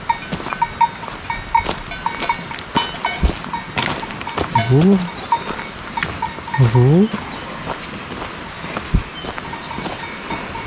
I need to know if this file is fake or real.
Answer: real